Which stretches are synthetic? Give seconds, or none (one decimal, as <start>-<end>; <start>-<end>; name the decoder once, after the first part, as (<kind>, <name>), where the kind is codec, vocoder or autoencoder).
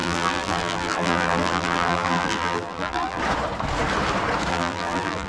0.0-3.2 (vocoder, BigVGAN v2); 4.5-5.3